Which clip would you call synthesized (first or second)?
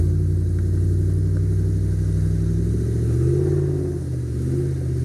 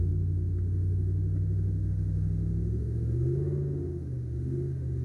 second